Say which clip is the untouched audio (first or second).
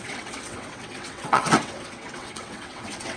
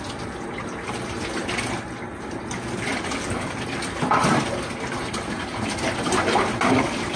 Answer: second